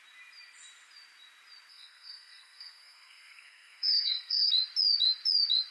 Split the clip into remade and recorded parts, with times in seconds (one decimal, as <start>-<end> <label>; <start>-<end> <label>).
0.0-1.7 recorded; 1.7-4.5 remade; 4.5-5.7 recorded